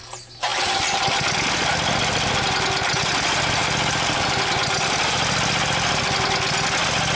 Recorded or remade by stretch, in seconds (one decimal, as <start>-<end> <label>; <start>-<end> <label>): 0.0-7.1 recorded